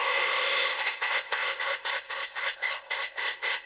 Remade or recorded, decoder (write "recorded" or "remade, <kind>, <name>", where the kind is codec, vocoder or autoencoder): remade, codec, ZipCodec